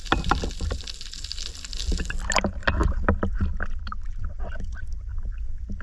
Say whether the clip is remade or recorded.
recorded